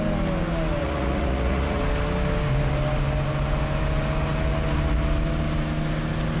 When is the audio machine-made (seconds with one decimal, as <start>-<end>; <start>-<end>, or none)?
0.8-1.8